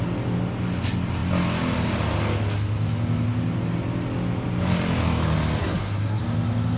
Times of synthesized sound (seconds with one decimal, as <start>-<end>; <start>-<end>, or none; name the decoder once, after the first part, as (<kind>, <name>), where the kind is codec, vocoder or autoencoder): 5.6-6.2 (codec, SNAC)